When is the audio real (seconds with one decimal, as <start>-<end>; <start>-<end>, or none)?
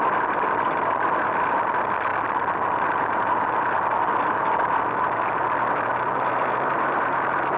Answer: 2.1-5.4